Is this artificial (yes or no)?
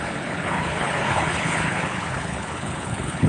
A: yes